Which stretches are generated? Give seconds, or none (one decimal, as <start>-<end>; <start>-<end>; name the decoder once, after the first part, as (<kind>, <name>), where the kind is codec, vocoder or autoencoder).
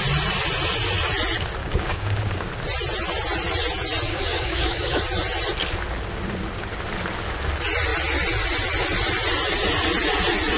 1.6-2.5 (codec, DAC); 4.1-5.0